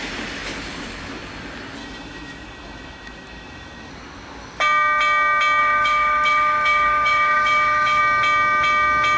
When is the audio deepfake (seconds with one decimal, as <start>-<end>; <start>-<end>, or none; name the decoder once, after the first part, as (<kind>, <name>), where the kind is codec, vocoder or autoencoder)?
1.8-3.9 (autoencoder, DAC-VAE); 5.6-8.0